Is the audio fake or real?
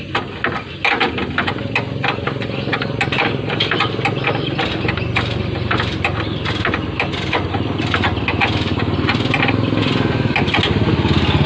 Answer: real